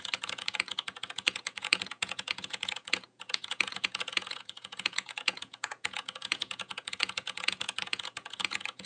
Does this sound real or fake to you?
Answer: fake